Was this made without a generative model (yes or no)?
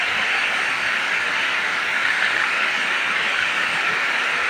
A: no